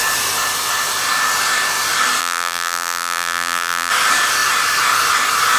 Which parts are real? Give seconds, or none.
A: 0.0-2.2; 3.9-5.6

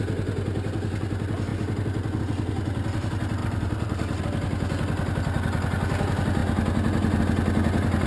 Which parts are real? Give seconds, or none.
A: 0.0-3.4; 4.2-8.1

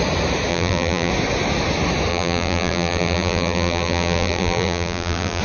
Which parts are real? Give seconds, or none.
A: 0.0-0.5; 1.1-2.1

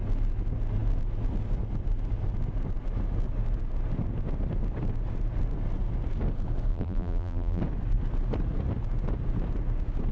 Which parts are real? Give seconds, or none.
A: 0.0-6.7; 7.6-10.1